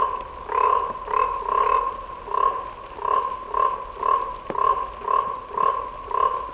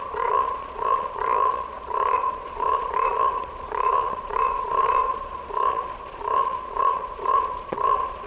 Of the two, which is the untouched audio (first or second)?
first